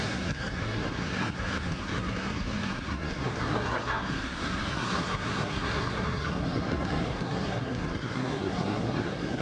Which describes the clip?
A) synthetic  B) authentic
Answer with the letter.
A